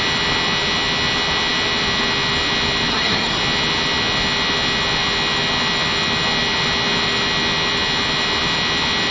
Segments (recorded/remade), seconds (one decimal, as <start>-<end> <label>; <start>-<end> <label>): 0.0-2.9 recorded; 2.9-3.4 remade; 3.4-9.1 recorded